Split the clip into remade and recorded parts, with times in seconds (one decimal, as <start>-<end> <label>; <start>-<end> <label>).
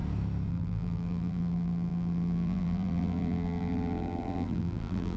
0.0-0.5 recorded; 0.5-5.2 remade